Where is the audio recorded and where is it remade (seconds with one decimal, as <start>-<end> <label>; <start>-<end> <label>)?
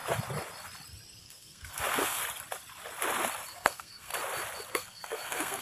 0.0-1.2 recorded; 1.2-2.2 remade; 2.2-3.5 recorded; 3.5-4.1 remade; 4.1-4.7 recorded; 4.7-5.6 remade